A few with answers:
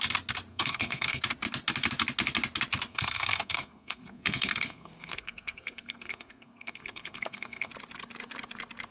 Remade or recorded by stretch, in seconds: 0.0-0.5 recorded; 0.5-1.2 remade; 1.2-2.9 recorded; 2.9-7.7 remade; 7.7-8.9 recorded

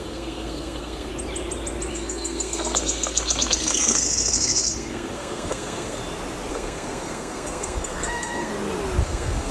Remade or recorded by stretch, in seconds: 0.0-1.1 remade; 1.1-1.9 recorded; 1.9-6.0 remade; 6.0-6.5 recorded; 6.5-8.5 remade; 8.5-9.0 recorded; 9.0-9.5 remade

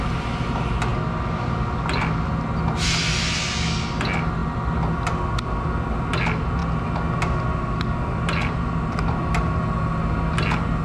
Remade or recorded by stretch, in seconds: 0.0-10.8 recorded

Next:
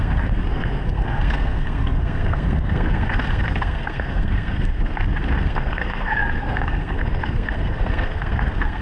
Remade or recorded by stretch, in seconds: 0.0-8.8 remade